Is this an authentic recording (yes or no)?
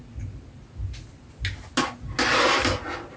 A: yes